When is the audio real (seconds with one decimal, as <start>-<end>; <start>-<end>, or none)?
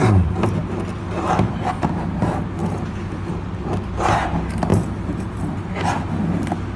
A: 0.0-4.7; 5.7-6.8